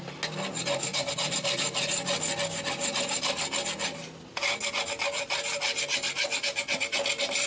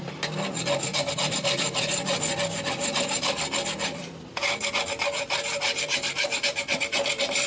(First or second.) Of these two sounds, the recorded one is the first